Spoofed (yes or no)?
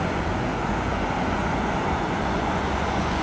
yes